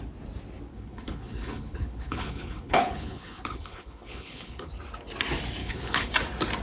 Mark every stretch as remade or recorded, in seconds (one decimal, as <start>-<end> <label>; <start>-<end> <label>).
0.0-0.7 recorded; 0.7-4.7 remade; 4.7-5.6 recorded; 5.6-6.1 remade; 6.1-6.6 recorded